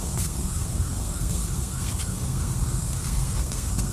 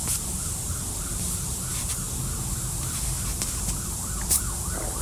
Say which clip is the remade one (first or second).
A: first